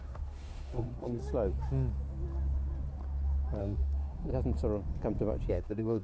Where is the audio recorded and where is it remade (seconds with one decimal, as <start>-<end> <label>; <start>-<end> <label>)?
0.0-1.2 remade; 1.2-3.6 recorded; 3.6-4.3 remade; 4.3-5.5 recorded; 5.5-6.0 remade